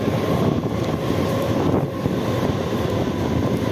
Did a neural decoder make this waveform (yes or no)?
no